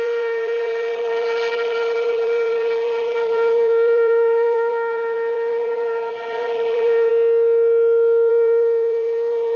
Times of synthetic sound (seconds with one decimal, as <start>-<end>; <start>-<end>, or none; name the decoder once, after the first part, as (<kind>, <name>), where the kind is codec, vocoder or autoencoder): 0.0-7.1 (vocoder, BigVGAN v2); 8.3-9.6

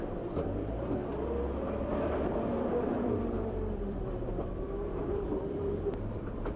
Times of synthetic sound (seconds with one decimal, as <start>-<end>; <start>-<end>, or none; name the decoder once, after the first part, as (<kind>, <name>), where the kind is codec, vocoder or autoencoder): 1.1-2.0 (vocoder, BigVGAN v2); 2.5-6.6

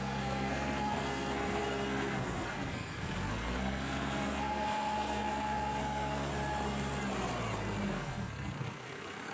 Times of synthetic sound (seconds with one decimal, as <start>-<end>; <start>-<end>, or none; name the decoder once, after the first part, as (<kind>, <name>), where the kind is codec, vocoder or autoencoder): 0.0-6.3 (codec, SNAC); 7.9-9.3

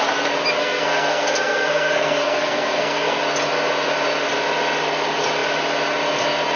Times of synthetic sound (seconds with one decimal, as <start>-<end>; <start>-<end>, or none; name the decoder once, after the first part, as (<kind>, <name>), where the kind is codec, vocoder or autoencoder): 0.6-3.2 (codec, SNAC)

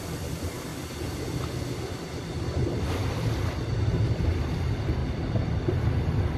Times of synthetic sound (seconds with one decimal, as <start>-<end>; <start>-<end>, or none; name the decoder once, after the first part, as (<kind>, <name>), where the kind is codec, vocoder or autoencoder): 0.0-0.7 (vocoder, BigVGAN v2); 1.8-3.0; 3.7-5.0; 5.7-6.4